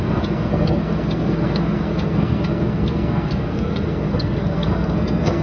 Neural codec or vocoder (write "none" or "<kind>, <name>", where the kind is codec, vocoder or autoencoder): codec, SNAC